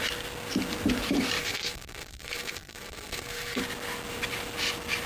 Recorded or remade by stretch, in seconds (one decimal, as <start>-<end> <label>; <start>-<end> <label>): 0.0-1.4 recorded; 1.4-3.6 remade; 3.6-5.1 recorded